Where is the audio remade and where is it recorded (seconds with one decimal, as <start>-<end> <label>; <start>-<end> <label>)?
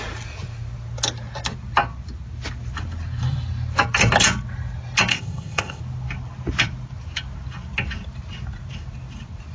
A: 0.0-5.1 recorded; 5.1-5.8 remade; 5.8-9.5 recorded